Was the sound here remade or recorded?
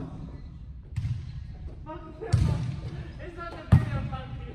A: remade